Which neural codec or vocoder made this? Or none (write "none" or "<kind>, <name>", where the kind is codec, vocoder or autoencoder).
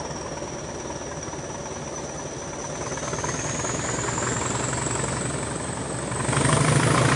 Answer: none